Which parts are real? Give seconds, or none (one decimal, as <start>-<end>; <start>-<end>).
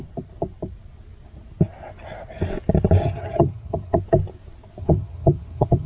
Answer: 0.0-3.0; 4.0-4.8